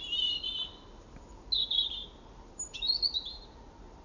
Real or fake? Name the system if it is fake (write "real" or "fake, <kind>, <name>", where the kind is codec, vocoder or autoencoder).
real